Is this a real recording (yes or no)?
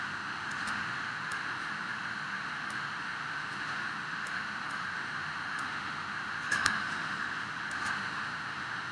no